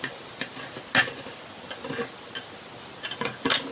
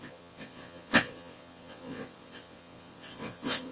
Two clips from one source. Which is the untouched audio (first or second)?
first